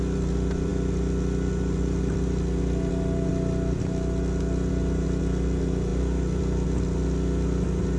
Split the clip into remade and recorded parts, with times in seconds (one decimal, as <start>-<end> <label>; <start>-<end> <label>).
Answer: 0.0-8.0 recorded

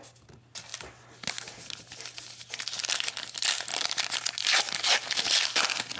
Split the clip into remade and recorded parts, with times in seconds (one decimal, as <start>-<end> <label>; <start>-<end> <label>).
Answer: 0.0-6.0 recorded

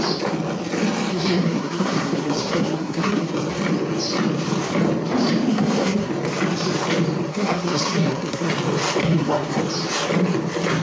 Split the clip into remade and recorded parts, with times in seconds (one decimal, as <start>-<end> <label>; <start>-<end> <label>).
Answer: 0.0-1.1 recorded; 1.1-3.3 remade; 3.3-5.5 recorded; 5.5-6.1 remade; 6.1-7.3 recorded; 7.3-8.5 remade; 8.5-9.0 recorded; 9.0-9.6 remade; 9.6-10.8 recorded